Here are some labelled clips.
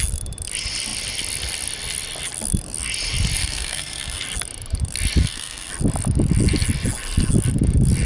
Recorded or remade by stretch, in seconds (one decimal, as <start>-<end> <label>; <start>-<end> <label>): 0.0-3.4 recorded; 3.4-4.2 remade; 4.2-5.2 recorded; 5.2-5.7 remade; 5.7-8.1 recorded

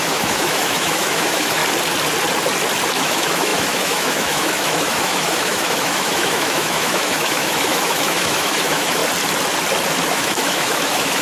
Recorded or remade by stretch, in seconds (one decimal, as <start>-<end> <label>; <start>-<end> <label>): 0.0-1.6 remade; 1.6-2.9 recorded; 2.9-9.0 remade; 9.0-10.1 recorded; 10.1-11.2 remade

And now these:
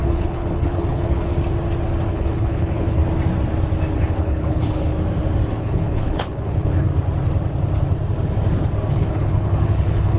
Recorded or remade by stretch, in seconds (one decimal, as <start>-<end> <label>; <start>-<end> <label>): 0.0-1.3 remade; 1.3-2.1 recorded; 2.1-3.0 remade; 3.0-4.2 recorded; 4.2-4.9 remade; 4.9-5.6 recorded; 5.6-6.9 remade; 6.9-8.9 recorded; 8.9-10.2 remade